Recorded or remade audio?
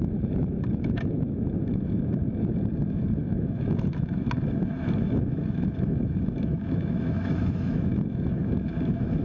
remade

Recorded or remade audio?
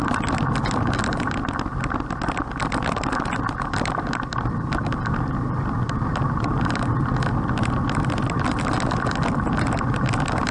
recorded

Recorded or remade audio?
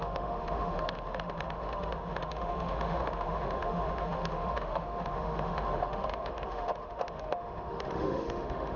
remade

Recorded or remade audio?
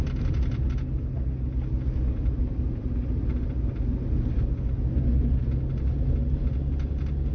recorded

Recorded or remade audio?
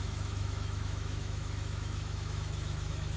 remade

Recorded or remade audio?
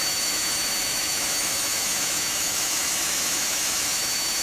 remade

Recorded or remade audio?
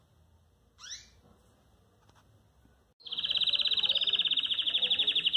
recorded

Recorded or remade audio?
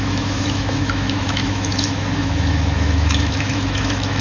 remade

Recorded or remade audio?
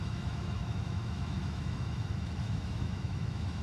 remade